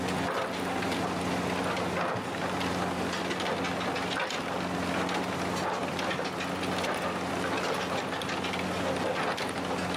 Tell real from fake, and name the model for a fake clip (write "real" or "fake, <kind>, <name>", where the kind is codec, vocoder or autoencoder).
real